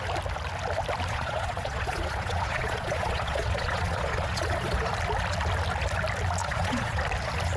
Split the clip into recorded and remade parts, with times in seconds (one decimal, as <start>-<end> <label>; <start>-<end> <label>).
0.0-1.1 recorded; 1.1-4.9 remade; 4.9-6.4 recorded; 6.4-7.0 remade; 7.0-7.6 recorded